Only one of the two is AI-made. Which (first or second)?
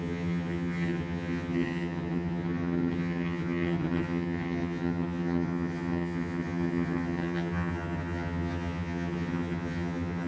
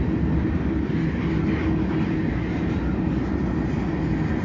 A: first